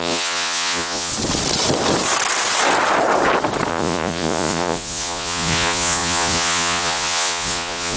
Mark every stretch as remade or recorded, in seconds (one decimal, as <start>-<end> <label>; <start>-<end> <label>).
0.0-1.1 remade; 1.1-3.7 recorded; 3.7-8.0 remade